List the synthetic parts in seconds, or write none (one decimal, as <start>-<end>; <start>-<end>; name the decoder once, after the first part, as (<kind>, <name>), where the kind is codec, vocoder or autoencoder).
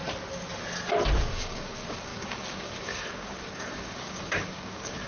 1.3-5.1 (codec, DAC)